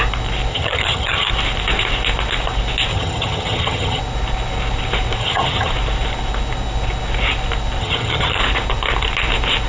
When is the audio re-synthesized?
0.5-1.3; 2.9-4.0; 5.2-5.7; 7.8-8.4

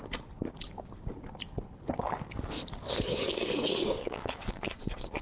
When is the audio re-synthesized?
4.0-5.2

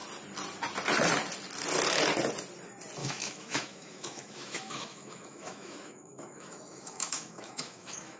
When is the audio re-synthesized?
3.0-8.2

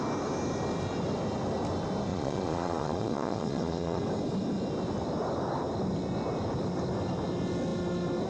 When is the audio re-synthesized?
2.1-4.0

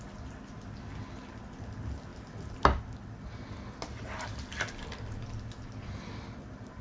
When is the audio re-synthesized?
none

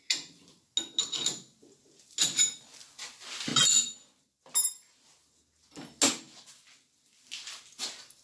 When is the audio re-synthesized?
none

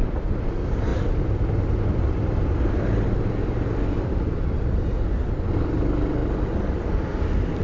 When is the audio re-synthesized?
none

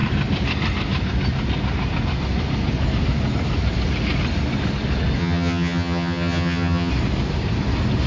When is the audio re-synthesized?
5.2-6.9